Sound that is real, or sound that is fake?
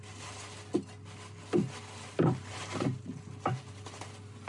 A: real